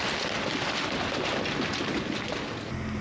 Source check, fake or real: real